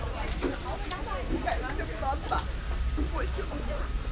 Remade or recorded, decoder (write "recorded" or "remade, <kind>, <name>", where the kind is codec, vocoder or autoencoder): recorded